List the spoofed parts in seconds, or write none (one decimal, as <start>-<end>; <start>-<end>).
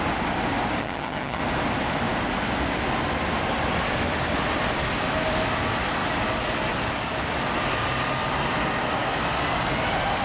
0.8-1.4